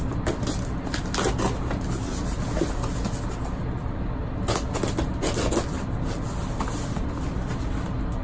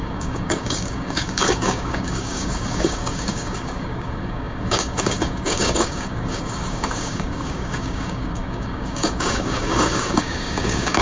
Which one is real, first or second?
first